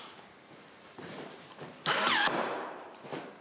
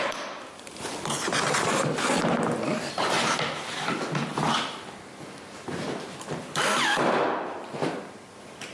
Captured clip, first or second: second